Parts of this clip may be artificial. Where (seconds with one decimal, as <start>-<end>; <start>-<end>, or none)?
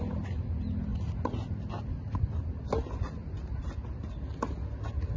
none